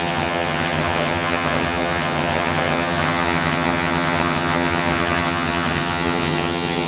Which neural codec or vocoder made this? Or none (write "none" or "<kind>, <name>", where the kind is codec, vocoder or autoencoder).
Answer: vocoder, HiFi-GAN